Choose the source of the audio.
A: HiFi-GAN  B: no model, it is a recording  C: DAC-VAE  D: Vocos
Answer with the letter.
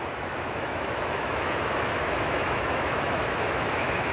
C